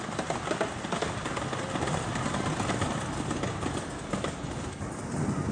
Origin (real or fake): real